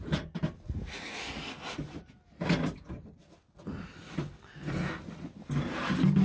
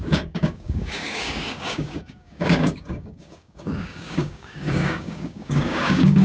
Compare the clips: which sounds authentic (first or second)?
first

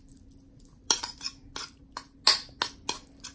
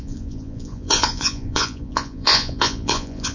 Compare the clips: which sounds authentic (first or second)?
first